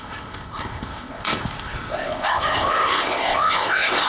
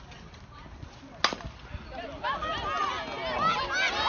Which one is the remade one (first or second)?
first